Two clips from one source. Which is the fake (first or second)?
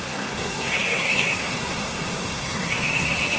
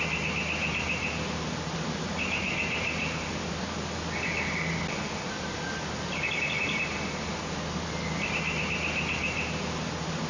first